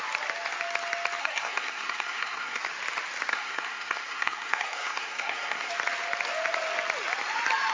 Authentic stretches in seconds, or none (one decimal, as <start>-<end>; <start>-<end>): 0.0-1.2; 2.6-3.3; 5.7-7.7